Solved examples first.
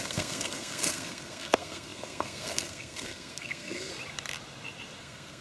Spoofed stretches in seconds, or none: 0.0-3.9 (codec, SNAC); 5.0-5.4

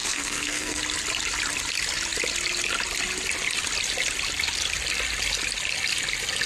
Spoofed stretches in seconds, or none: 0.0-0.8 (codec, SNAC)